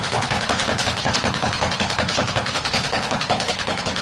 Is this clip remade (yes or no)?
yes